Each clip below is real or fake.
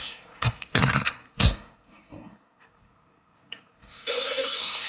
fake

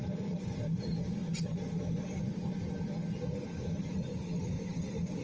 real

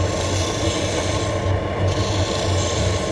real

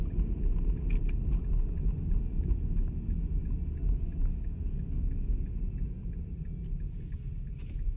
real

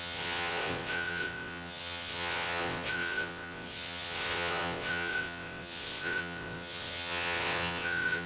fake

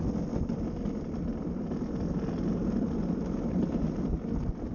real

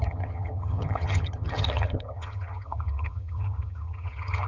fake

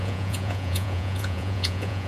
fake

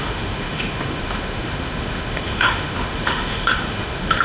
fake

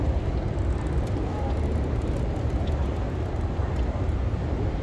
real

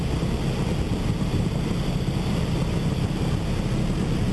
real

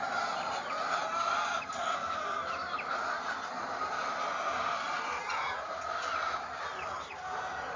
real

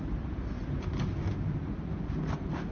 real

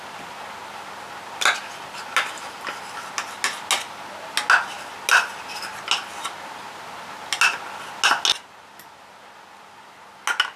real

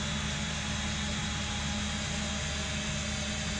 real